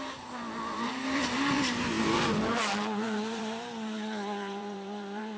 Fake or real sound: fake